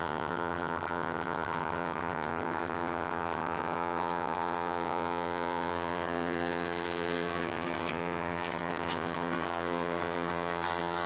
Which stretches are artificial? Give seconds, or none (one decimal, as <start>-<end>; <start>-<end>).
0.0-11.1

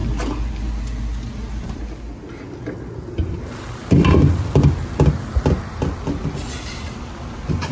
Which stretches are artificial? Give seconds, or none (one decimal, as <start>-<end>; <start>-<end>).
none

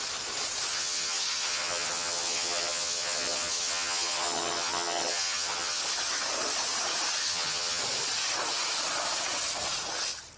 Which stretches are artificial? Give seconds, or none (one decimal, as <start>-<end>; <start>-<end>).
0.7-5.8; 7.2-7.8

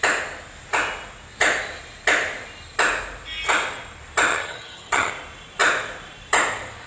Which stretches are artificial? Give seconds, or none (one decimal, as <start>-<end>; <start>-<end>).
4.3-5.1

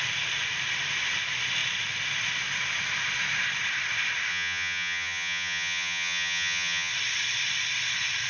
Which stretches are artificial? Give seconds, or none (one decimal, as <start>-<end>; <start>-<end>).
4.3-6.9

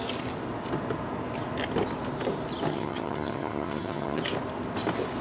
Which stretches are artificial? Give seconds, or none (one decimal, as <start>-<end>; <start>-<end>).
2.7-4.2

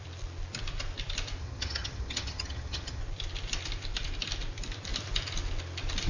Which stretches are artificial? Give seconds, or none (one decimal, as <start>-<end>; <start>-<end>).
1.4-3.0

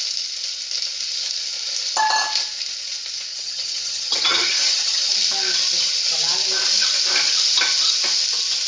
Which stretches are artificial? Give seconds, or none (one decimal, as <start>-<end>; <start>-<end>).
3.3-5.1